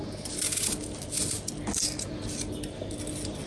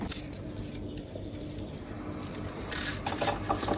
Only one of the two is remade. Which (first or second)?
second